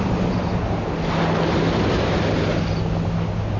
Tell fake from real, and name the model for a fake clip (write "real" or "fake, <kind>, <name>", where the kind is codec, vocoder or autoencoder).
real